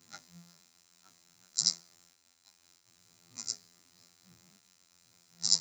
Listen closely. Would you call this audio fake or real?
fake